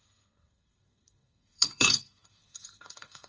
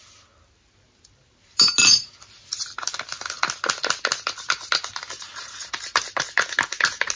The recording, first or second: second